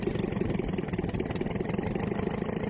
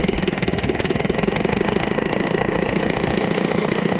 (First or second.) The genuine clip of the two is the first